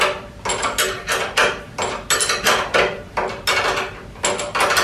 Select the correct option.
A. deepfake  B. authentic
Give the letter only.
B